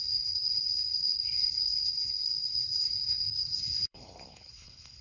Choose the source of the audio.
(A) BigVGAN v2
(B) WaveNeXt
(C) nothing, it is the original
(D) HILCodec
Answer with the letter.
D